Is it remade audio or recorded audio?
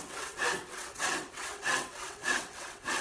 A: remade